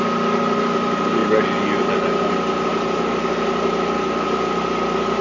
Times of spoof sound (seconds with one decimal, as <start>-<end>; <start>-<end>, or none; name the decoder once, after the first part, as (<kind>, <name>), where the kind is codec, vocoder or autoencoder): none